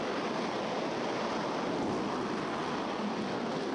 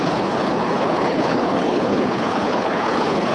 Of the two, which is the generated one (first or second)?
second